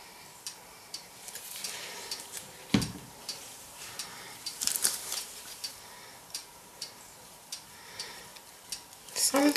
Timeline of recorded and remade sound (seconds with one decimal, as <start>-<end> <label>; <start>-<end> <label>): 0.0-8.3 remade; 8.3-9.0 recorded; 9.0-9.6 remade